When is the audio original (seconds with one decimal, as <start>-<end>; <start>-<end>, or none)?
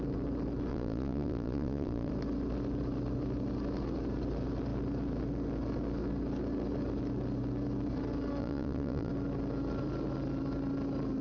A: 0.0-0.7; 2.1-8.4; 9.1-11.2